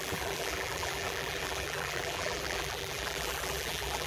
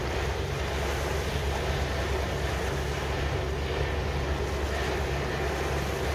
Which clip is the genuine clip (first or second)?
second